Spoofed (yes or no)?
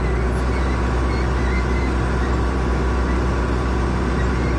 no